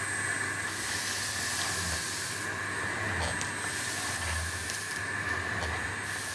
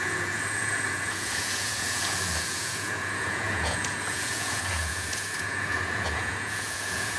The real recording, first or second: first